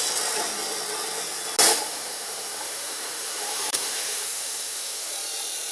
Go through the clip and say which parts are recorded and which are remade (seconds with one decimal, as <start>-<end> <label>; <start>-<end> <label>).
0.0-1.7 recorded; 1.7-5.1 remade; 5.1-5.7 recorded